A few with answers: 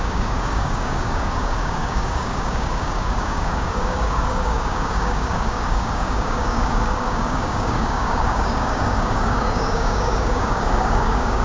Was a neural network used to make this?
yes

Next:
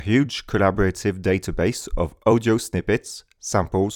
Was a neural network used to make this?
yes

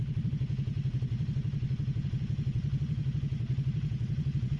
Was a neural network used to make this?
yes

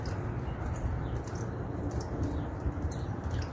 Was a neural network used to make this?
no